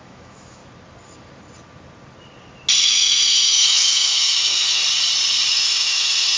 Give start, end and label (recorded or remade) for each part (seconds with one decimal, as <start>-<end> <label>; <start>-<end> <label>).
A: 0.0-0.6 remade; 0.6-2.8 recorded; 2.8-4.8 remade; 4.8-5.5 recorded; 5.5-6.4 remade